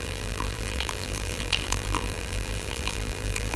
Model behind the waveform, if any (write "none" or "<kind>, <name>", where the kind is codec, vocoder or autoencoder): vocoder, BigVGAN v2